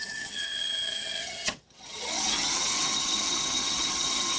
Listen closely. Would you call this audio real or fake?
fake